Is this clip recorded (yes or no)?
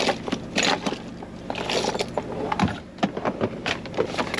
yes